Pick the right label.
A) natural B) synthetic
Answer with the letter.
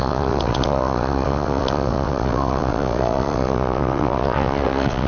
B